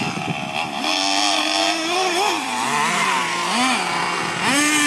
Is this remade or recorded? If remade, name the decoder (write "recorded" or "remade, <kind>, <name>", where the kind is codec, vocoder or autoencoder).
recorded